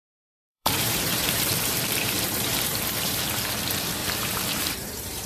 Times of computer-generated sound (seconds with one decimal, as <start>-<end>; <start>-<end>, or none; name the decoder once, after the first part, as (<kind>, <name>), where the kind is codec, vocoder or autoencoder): 0.0-3.2 (vocoder, BigVGAN v2); 4.0-5.3